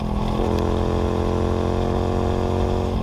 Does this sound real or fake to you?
real